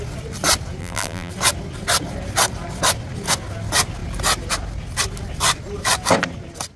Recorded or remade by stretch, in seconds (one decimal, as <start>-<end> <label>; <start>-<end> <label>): 0.0-0.8 recorded; 0.8-1.3 remade; 1.3-6.8 recorded